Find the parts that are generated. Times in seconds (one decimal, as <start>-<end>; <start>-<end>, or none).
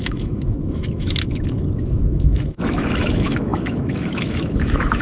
0.0-5.0